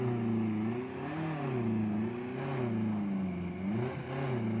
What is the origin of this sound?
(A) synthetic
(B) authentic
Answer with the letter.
B